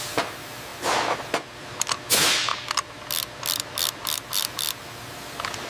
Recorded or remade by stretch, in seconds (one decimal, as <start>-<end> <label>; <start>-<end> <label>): 0.0-5.7 recorded